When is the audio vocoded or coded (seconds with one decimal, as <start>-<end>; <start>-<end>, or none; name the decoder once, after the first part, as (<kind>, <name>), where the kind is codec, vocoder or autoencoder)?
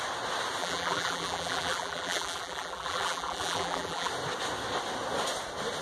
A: 0.6-4.1 (vocoder, BigVGAN v2)